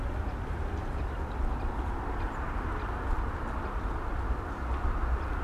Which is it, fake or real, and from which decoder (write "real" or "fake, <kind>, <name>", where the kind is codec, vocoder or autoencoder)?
real